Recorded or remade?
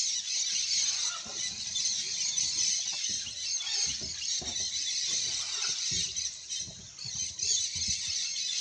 recorded